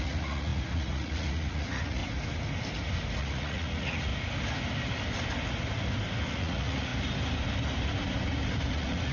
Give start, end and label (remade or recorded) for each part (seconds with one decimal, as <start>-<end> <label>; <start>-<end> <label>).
0.0-2.0 remade; 2.0-3.2 recorded; 3.2-4.1 remade; 4.1-6.3 recorded; 6.3-6.9 remade; 6.9-8.7 recorded; 8.7-9.1 remade